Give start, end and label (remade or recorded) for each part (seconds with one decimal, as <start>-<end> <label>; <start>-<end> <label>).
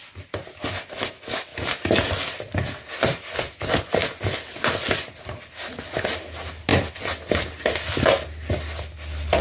0.0-9.4 recorded